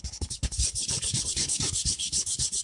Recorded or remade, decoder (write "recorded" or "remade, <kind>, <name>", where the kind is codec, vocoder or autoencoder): remade, codec, HILCodec